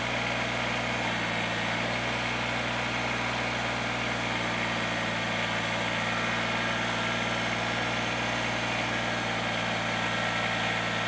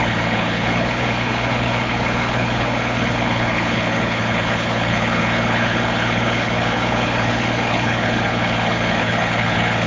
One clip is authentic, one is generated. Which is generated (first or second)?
second